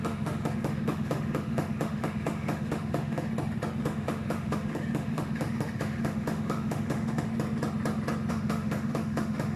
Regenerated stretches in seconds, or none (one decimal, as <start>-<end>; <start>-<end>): 0.0-3.3; 3.8-7.3; 8.3-9.6